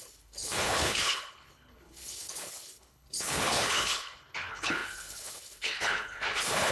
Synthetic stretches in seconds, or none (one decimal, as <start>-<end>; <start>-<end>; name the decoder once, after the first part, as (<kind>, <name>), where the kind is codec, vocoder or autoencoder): 0.0-6.7 (codec, HILCodec)